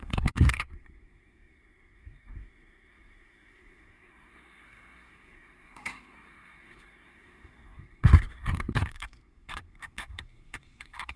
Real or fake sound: fake